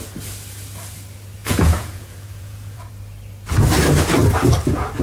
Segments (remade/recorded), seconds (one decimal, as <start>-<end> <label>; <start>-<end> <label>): 0.0-1.4 recorded; 1.4-2.9 remade; 2.9-5.0 recorded